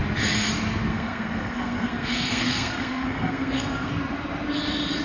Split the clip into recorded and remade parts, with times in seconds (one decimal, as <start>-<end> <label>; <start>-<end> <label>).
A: 0.0-0.9 recorded; 0.9-3.9 remade; 3.9-5.0 recorded